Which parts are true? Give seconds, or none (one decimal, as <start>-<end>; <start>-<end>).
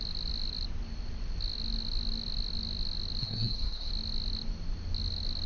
0.0-3.2; 3.9-5.5